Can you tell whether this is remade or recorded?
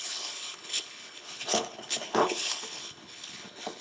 remade